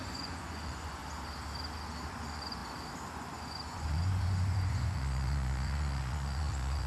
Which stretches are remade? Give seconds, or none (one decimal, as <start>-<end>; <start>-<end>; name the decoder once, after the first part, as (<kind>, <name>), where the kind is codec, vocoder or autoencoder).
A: 0.0-1.0 (vocoder, Vocos); 2.1-2.6; 3.1-6.9